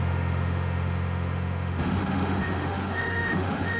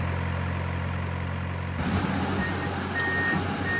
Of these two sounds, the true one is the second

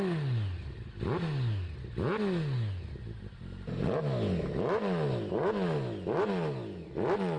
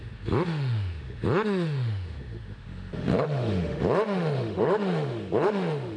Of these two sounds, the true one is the first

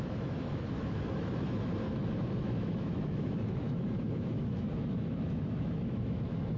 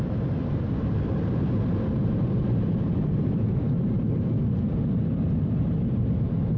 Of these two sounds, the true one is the second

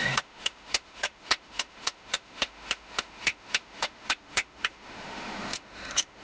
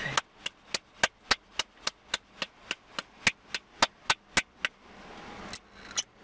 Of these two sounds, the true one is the second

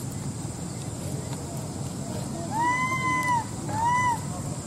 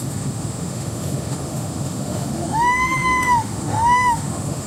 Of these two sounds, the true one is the first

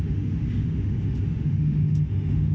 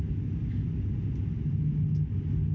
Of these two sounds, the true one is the second